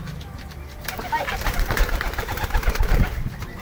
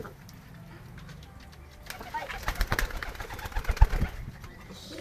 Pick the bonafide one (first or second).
second